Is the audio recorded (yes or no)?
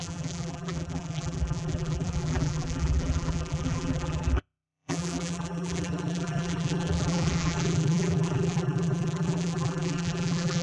no